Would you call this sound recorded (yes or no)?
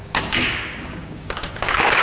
no